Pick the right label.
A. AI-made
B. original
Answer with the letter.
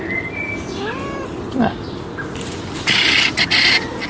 B